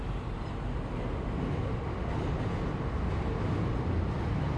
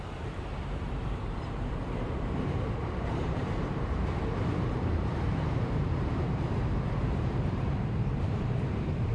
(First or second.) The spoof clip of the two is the second